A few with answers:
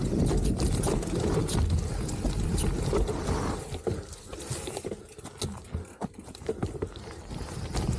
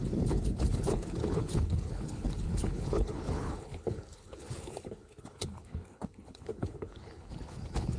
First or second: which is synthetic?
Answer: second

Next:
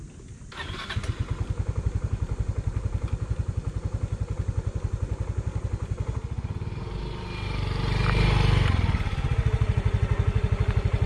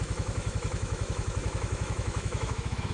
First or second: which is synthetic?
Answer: second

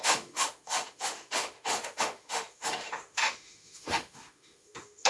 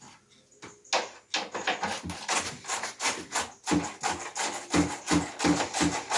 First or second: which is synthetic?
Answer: first